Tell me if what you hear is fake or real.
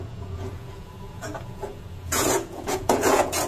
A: fake